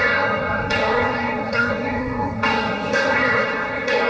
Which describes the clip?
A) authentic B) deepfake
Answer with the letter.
B